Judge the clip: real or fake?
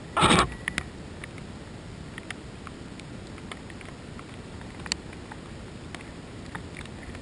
real